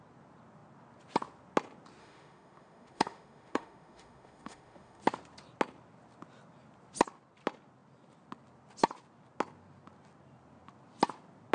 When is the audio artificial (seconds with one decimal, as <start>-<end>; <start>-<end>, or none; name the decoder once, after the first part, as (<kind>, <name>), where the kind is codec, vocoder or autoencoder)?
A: 2.0-5.0 (autoencoder, DAC-VAE)